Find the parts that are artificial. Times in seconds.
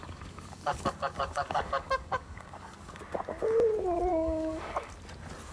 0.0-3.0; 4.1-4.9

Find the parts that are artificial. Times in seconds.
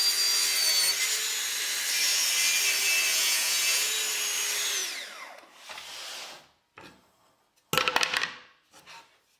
3.1-3.9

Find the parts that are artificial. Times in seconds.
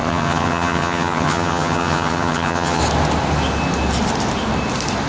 0.0-2.8